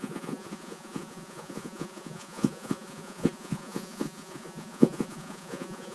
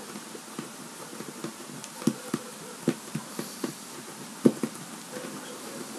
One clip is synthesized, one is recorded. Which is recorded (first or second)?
second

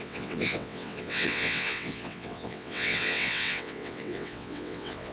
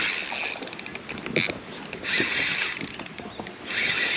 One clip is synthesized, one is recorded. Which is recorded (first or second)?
second